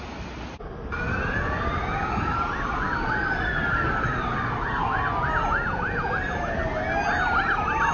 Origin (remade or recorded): recorded